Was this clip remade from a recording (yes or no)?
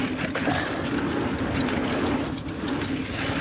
no